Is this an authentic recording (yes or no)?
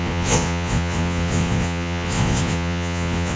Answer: no